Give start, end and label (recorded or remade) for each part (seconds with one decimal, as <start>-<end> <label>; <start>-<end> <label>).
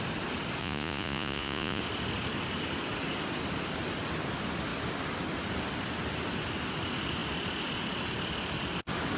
0.0-0.6 recorded; 0.6-1.8 remade; 1.8-9.2 recorded